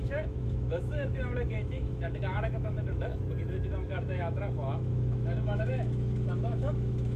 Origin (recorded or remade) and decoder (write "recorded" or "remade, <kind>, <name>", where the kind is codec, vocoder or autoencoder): remade, autoencoder, DAC-VAE